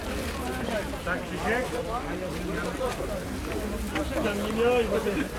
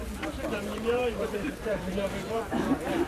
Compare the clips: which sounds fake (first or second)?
second